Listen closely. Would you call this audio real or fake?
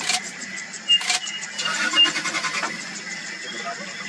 real